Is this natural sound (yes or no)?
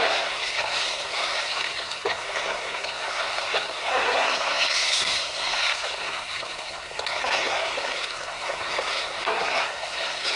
no